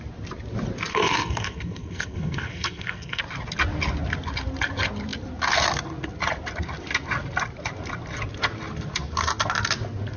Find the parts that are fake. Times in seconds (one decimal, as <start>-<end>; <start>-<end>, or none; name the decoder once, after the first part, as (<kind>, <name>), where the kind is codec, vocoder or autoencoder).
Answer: 0.9-3.2 (codec, SNAC)